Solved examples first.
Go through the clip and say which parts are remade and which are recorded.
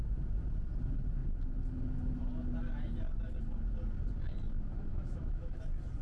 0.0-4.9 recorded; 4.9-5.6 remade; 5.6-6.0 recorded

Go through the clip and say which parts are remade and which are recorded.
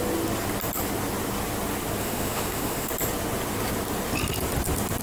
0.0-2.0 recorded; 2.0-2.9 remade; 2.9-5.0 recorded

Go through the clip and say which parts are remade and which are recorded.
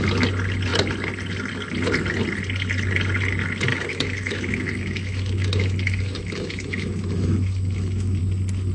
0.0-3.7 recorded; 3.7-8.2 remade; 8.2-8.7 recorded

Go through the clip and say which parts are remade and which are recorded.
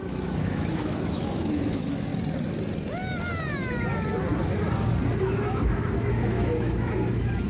0.0-2.1 remade; 2.1-5.2 recorded; 5.2-7.5 remade